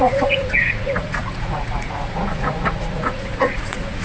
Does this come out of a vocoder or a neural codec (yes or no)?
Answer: yes